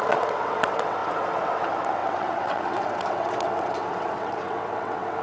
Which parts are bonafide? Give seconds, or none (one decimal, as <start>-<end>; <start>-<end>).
none